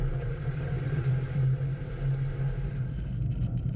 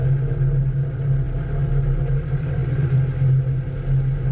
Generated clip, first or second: first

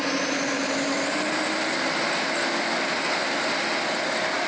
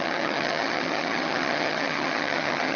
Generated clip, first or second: second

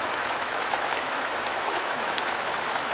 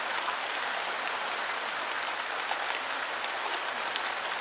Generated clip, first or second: first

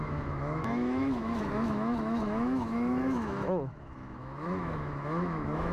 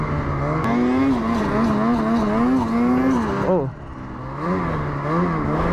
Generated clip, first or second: first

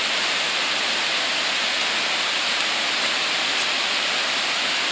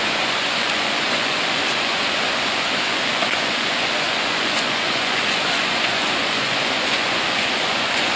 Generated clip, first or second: second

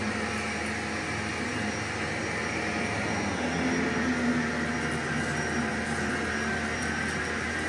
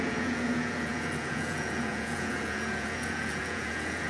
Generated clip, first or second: second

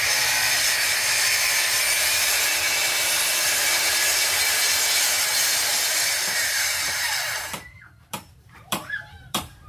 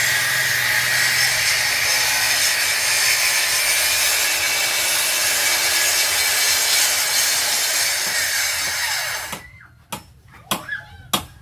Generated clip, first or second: first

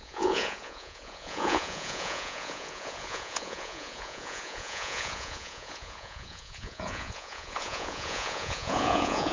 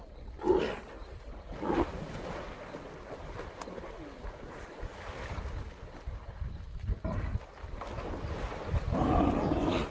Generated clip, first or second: first